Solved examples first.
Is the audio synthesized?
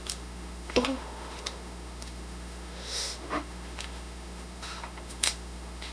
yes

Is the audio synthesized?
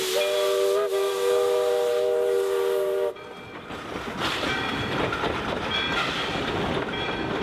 no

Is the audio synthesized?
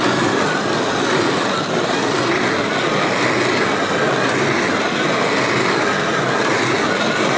no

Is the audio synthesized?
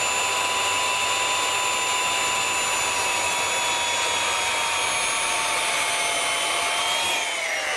no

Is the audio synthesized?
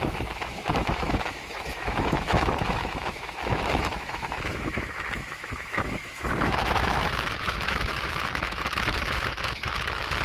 yes